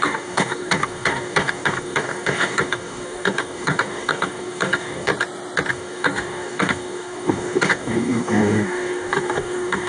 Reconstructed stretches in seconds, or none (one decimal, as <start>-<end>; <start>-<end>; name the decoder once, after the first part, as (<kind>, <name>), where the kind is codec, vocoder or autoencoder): 0.0-5.1 (codec, DAC); 5.7-9.9

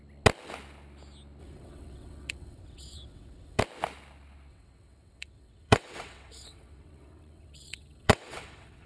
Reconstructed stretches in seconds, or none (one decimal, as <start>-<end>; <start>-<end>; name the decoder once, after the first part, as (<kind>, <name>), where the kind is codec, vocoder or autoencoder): 1.4-3.6 (vocoder, WaveNeXt); 4.5-8.9

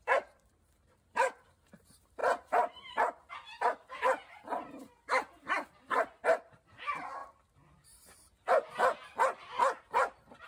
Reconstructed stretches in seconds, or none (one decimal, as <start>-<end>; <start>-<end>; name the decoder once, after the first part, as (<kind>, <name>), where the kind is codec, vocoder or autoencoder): 0.0-7.2 (vocoder, BigVGAN v2); 9.8-10.5

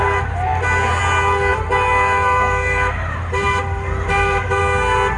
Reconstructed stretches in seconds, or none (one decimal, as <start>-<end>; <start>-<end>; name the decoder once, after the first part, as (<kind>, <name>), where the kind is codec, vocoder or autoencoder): 1.5-4.6 (vocoder, BigVGAN v2)

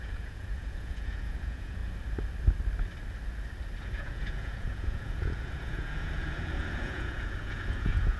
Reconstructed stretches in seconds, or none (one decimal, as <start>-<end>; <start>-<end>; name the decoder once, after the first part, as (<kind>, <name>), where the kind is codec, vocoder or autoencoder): 0.0-1.8 (vocoder, Vocos); 3.8-8.2